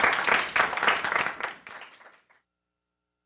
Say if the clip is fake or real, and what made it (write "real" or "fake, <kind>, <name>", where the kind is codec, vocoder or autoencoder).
real